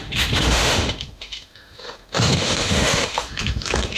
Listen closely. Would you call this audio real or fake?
fake